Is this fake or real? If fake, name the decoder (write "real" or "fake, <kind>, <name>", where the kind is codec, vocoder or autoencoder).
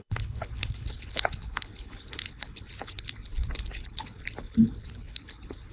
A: fake, codec, HILCodec